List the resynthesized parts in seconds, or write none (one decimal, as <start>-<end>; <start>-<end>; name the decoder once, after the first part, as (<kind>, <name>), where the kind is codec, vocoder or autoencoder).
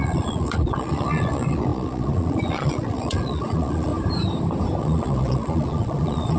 0.0-3.9 (vocoder, Vocos); 4.8-6.4